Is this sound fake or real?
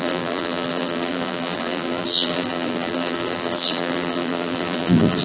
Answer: fake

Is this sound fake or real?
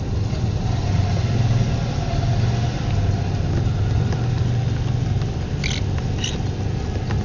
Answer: real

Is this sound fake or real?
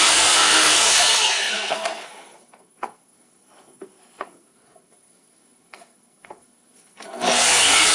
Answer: fake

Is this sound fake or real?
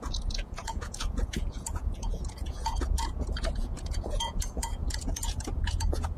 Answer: fake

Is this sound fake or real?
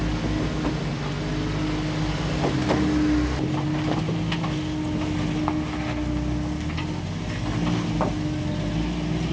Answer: real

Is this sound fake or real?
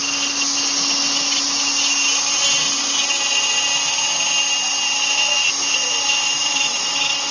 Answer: real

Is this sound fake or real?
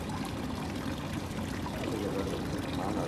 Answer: real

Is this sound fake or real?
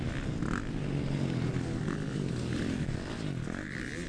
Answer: real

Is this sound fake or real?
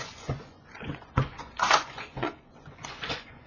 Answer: fake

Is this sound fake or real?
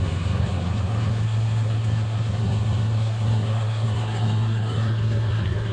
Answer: fake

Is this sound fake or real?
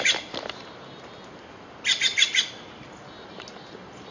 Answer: real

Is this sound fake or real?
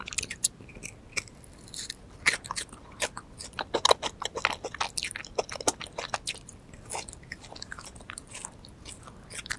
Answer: real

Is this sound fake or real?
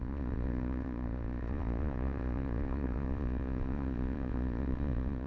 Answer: fake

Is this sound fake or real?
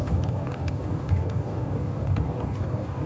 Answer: fake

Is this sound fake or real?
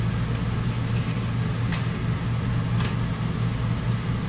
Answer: real